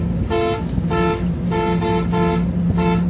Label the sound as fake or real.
real